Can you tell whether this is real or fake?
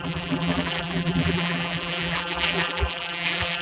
fake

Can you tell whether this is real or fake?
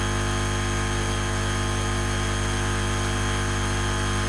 real